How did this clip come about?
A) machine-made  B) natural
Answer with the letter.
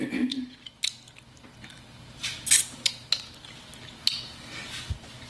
B